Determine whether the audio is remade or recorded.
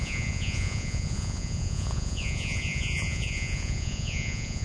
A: remade